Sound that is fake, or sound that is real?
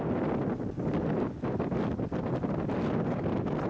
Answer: real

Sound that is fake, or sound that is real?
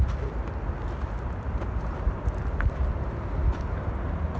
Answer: real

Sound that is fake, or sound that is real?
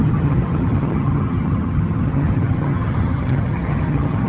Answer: fake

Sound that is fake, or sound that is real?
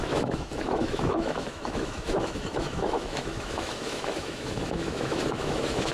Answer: fake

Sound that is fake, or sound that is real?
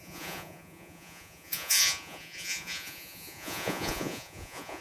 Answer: fake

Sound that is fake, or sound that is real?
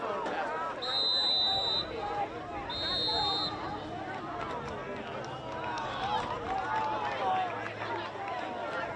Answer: real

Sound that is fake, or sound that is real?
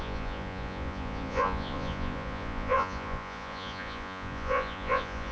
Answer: fake